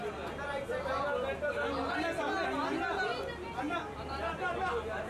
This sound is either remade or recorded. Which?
recorded